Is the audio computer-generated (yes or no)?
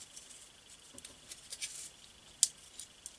no